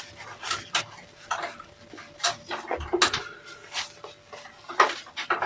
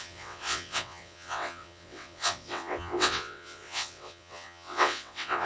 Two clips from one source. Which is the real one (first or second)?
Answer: first